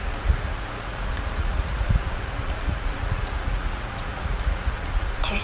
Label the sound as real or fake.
fake